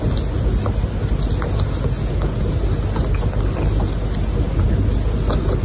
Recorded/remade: recorded